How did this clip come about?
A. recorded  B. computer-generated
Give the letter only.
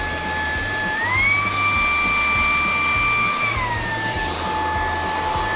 A